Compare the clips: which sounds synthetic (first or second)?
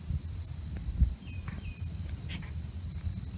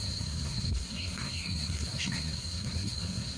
second